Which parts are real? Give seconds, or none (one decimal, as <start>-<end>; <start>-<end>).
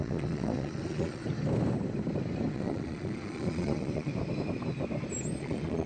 1.2-2.5; 4.1-5.4